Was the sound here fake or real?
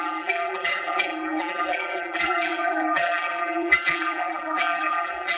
fake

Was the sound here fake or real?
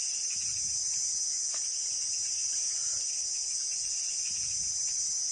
real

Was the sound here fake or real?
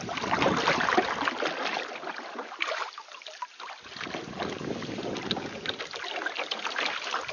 real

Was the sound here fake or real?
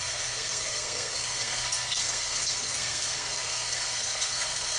fake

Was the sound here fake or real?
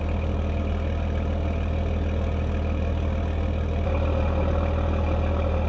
real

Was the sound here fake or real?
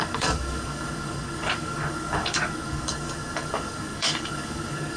fake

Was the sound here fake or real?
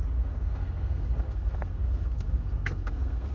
fake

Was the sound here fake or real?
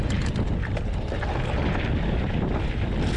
real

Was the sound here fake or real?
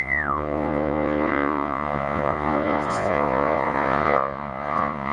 fake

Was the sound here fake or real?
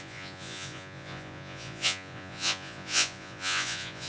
fake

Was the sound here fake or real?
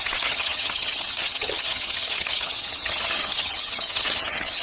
fake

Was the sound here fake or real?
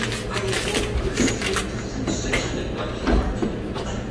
real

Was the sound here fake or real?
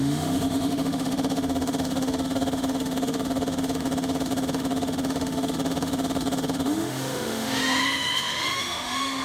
fake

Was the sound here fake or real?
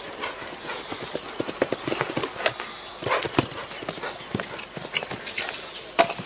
real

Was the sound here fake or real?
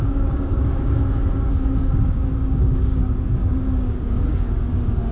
fake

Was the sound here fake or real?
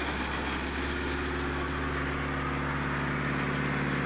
real